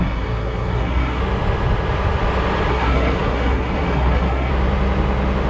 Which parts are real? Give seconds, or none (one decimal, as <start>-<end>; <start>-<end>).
1.2-2.7; 4.5-5.5